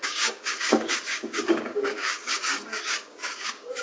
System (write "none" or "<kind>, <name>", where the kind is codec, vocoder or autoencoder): codec, DAC